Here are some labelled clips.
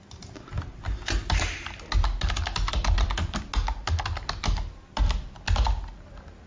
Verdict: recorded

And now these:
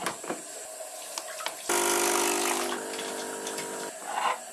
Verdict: recorded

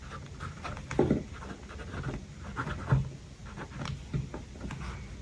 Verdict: recorded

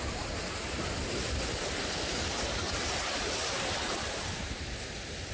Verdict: remade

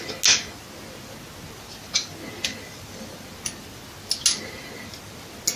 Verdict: recorded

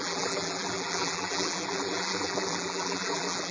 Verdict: remade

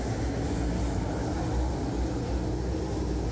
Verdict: recorded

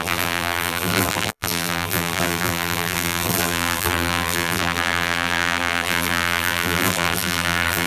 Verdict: remade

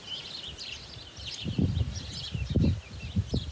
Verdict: remade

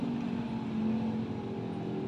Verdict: recorded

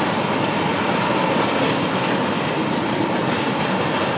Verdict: remade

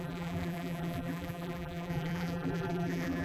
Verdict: remade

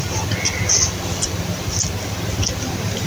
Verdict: recorded